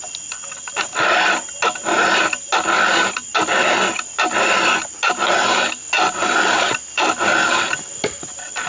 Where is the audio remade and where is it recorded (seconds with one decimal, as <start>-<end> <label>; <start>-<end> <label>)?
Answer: 0.0-8.7 recorded